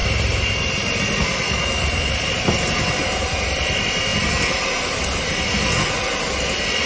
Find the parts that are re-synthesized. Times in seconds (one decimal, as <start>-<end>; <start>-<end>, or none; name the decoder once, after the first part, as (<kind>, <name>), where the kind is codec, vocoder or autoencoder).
none